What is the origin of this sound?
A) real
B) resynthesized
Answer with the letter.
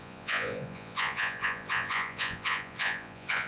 B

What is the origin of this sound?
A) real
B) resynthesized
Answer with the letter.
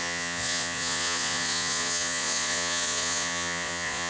B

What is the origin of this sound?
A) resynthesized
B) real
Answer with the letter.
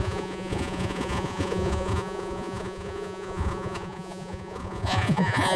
A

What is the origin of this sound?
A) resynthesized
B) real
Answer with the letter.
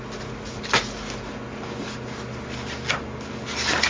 B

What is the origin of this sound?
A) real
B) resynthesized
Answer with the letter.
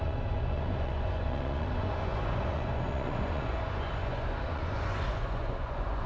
B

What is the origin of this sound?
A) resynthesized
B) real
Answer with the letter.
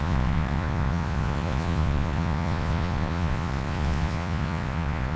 A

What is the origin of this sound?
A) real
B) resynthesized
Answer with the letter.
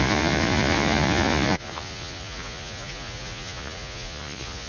B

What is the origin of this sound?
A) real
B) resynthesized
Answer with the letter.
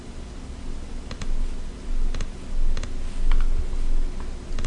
A